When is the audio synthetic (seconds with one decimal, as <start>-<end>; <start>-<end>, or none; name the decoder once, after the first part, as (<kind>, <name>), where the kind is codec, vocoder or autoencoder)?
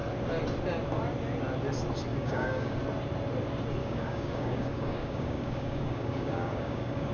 2.1-2.8 (codec, DAC); 3.8-7.1